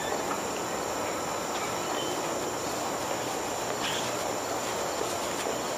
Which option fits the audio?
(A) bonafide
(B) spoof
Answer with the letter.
A